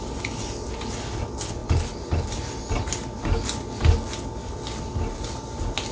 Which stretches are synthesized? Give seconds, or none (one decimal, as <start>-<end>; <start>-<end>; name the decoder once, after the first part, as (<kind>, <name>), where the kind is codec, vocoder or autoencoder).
none